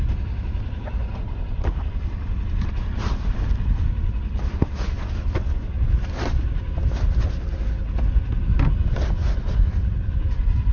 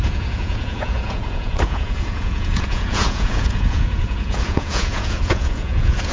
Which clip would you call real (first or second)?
first